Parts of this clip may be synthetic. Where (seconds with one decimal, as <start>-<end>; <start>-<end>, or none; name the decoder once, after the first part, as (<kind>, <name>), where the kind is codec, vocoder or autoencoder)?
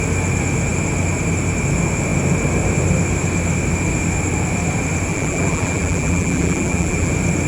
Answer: 5.1-7.1 (vocoder, BigVGAN v2)